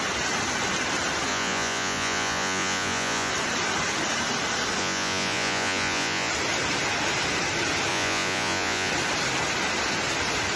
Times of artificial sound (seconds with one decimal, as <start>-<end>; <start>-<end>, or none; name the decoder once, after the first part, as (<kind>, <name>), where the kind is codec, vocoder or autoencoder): 1.3-3.3 (vocoder, Vocos); 4.8-6.3; 7.9-8.9

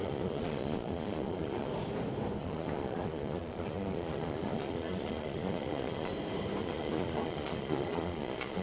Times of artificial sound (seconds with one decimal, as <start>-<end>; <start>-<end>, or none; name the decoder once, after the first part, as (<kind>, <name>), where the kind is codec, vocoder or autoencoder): 0.0-1.7 (vocoder, Vocos); 2.4-6.1; 6.6-8.6

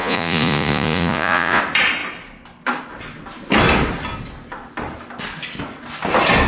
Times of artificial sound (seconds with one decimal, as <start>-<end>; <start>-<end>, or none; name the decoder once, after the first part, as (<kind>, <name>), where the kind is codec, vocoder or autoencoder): 0.0-1.6 (vocoder, Vocos)